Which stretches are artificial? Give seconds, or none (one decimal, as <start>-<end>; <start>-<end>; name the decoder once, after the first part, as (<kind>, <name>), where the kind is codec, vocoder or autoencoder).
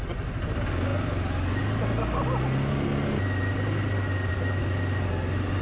none